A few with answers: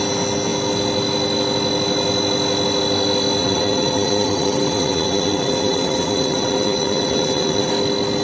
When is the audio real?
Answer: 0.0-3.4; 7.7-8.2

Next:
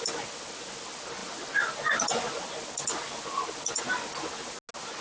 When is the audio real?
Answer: 0.0-5.0

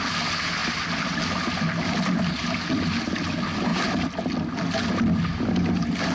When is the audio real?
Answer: 0.0-6.1

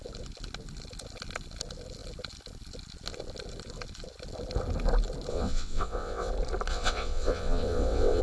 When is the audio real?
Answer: 0.0-5.3; 6.3-6.7

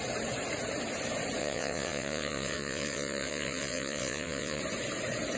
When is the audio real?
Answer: 0.0-1.4; 4.6-5.4